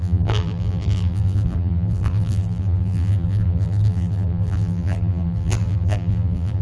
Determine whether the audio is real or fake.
fake